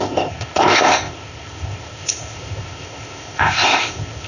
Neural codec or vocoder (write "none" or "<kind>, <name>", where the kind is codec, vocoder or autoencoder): codec, ZipCodec